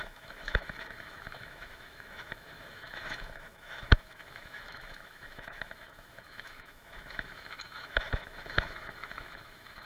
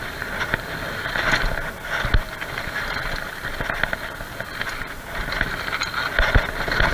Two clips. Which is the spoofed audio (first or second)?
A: first